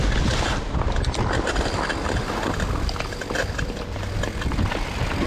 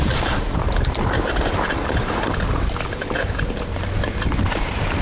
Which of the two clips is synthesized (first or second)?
second